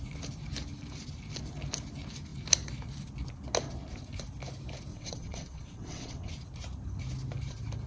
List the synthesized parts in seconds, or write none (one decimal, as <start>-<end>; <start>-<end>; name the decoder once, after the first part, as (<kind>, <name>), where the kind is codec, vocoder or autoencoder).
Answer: 4.9-6.3 (vocoder, WaveNeXt)